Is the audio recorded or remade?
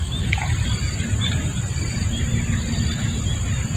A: recorded